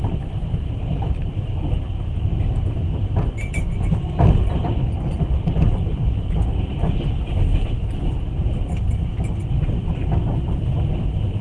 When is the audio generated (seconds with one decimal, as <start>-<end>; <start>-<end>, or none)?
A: 0.0-5.9; 7.7-11.4